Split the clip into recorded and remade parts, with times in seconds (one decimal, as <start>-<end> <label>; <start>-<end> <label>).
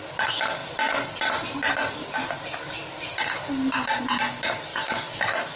0.0-5.6 recorded